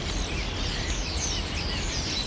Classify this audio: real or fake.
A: real